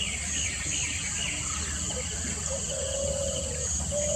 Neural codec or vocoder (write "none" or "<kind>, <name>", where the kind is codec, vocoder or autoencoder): none